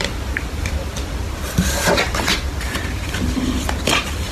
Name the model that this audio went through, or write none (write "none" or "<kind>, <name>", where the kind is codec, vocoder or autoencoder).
none